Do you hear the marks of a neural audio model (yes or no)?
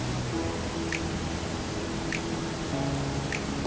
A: no